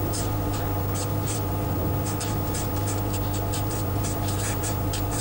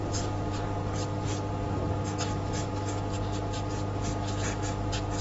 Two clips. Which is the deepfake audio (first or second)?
first